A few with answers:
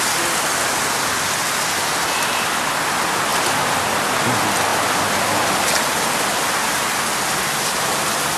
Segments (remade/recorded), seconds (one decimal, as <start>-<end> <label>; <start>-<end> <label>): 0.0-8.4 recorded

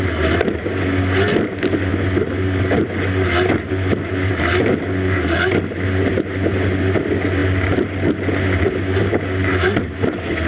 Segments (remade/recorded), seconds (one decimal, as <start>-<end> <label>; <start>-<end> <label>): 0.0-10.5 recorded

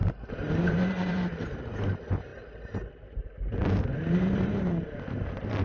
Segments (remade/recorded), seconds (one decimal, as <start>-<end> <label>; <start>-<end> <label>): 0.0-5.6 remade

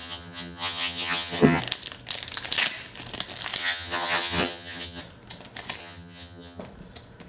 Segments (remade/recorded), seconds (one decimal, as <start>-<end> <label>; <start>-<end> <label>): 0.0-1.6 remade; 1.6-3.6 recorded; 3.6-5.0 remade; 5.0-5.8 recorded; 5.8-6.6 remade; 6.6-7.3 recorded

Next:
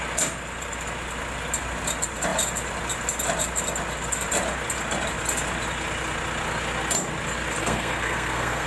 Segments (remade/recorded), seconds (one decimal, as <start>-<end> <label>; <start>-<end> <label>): 0.0-7.6 recorded; 7.6-8.7 remade

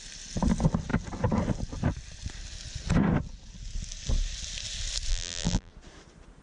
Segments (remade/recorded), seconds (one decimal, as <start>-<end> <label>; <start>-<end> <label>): 0.0-5.1 recorded; 5.1-5.7 remade; 5.7-6.4 recorded

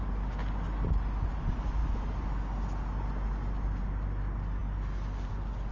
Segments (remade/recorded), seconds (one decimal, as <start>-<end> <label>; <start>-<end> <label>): 0.0-5.7 recorded

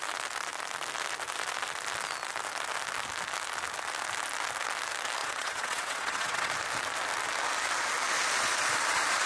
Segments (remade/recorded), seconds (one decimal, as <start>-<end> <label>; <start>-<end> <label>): 0.0-5.2 recorded; 5.2-6.5 remade; 6.5-9.3 recorded